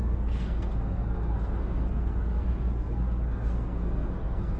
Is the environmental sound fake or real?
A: fake